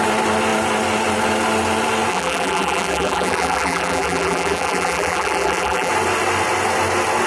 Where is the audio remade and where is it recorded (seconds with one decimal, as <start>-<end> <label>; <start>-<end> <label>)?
0.0-2.1 recorded; 2.1-5.9 remade; 5.9-7.3 recorded